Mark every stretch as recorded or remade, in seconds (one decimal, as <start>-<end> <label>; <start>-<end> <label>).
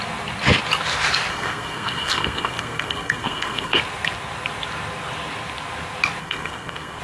0.0-1.3 recorded; 1.3-3.8 remade; 3.8-6.2 recorded; 6.2-7.0 remade